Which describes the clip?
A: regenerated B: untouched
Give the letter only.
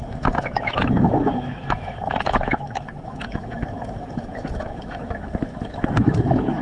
A